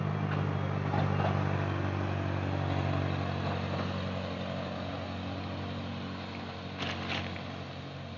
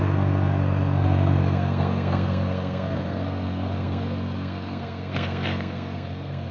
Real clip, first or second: first